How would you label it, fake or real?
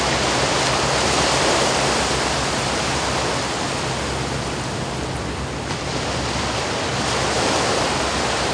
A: real